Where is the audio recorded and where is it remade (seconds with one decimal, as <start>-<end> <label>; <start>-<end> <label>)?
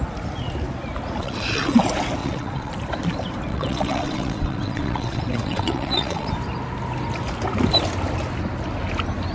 0.0-1.2 recorded; 1.2-1.8 remade; 1.8-2.2 recorded; 2.2-2.7 remade; 2.7-3.5 recorded; 3.5-6.3 remade; 6.3-9.3 recorded